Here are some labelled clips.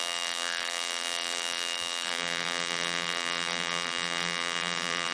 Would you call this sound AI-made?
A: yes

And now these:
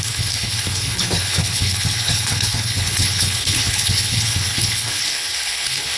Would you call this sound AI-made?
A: yes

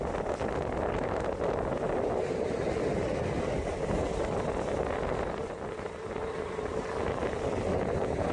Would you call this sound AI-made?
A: no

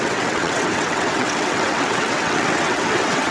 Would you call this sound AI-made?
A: yes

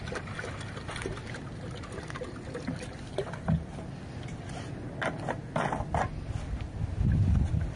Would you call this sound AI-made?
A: no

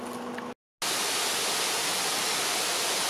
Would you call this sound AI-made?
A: no